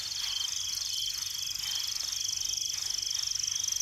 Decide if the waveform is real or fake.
real